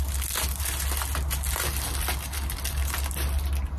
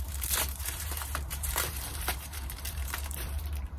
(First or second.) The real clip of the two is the first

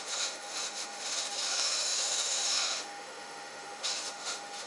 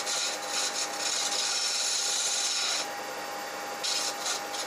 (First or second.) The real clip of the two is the second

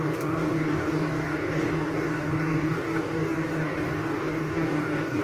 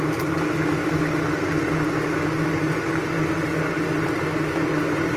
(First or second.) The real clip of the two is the second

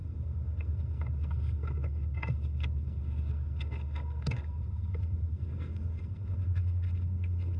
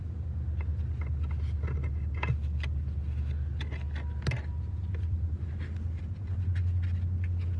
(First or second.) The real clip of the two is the second